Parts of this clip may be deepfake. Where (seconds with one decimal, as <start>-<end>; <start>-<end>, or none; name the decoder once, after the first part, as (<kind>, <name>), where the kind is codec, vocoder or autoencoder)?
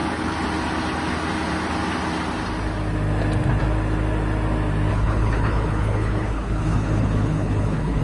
4.9-8.0 (codec, HILCodec)